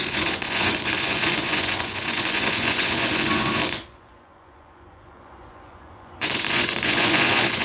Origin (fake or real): fake